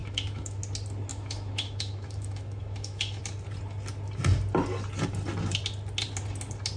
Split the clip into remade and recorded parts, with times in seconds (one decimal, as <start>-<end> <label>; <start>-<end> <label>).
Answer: 0.0-0.6 remade; 0.6-1.1 recorded; 1.1-3.2 remade; 3.2-6.8 recorded